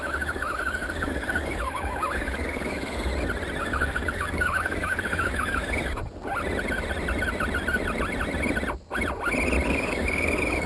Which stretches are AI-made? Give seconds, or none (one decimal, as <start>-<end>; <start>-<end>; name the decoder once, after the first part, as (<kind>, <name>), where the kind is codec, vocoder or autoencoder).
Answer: 0.0-3.1 (codec, DAC); 3.6-6.0; 9.7-10.7